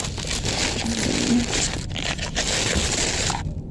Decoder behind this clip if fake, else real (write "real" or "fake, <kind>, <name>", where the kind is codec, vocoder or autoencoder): real